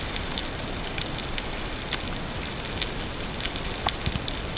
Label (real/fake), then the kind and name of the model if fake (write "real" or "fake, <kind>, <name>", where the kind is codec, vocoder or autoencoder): real